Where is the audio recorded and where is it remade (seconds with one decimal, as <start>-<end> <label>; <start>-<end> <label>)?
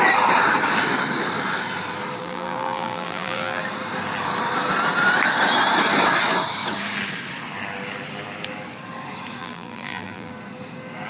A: 0.0-2.2 recorded; 2.2-3.6 remade; 3.6-9.4 recorded; 9.4-10.3 remade; 10.3-11.1 recorded